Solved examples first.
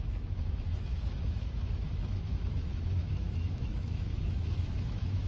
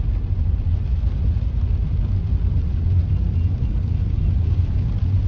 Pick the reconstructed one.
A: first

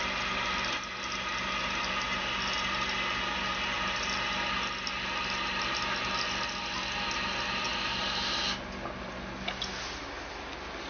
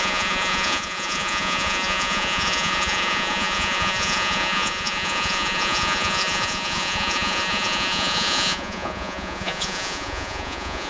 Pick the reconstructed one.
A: second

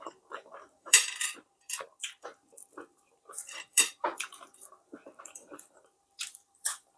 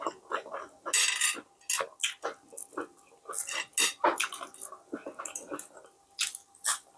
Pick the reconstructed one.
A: first